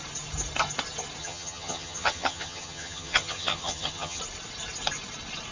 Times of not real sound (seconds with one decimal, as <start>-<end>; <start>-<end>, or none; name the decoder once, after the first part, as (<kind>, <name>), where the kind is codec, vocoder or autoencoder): 1.2-4.2 (vocoder, HiFi-GAN)